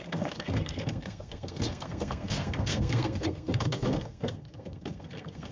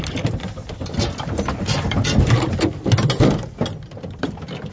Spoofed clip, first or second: first